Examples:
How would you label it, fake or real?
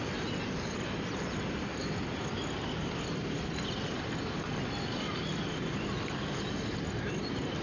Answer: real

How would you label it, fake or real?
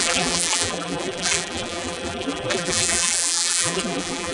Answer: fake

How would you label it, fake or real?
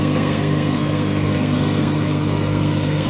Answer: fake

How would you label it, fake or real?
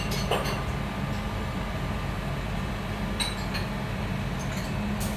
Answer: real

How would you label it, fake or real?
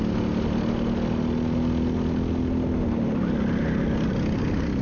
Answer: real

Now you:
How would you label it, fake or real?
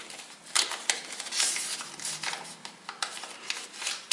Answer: real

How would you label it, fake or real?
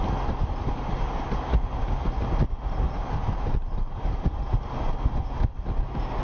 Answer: real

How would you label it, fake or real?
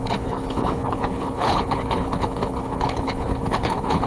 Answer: fake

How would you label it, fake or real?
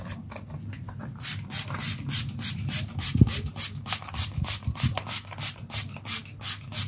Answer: fake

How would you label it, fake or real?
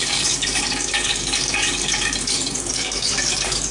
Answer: fake